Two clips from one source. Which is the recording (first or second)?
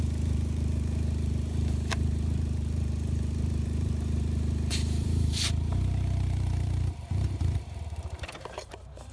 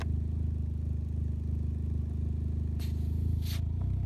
second